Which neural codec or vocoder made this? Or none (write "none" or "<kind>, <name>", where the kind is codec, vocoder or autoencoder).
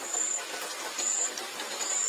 none